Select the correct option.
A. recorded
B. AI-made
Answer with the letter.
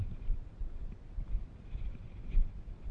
B